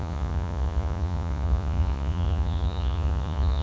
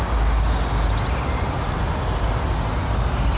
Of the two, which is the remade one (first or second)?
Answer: first